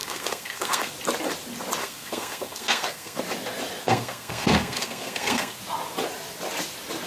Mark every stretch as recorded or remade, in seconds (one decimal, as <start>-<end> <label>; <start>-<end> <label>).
0.0-0.9 remade; 0.9-1.8 recorded; 1.8-3.2 remade; 3.2-3.8 recorded; 3.8-5.6 remade; 5.6-7.1 recorded